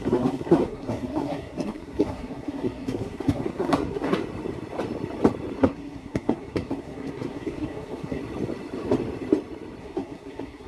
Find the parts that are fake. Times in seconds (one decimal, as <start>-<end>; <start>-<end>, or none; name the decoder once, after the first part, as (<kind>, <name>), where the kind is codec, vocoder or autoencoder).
0.0-4.2 (codec, SNAC); 5.6-8.2; 9.8-10.7